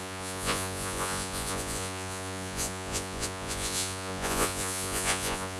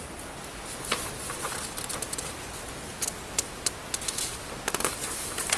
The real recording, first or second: second